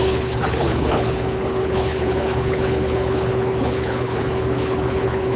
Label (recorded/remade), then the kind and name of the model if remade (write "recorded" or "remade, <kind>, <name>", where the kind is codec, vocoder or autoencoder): remade, codec, HILCodec